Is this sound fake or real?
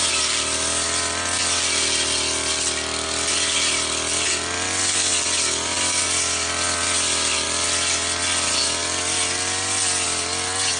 real